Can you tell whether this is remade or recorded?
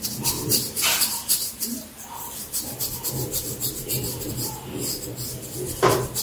remade